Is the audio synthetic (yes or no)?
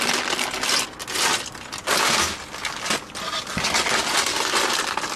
no